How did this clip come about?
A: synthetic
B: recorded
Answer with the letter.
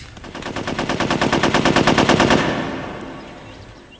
B